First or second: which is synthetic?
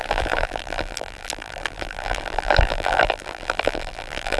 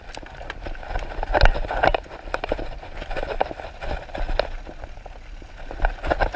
first